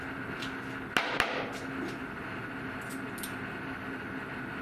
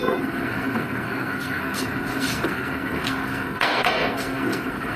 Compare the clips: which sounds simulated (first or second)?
second